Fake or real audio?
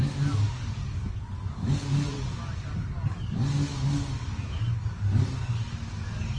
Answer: fake